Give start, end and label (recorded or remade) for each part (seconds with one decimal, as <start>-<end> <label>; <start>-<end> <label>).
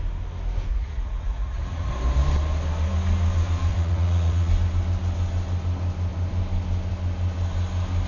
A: 0.0-0.7 recorded; 0.7-1.9 remade; 1.9-3.7 recorded; 3.7-4.5 remade; 4.5-8.1 recorded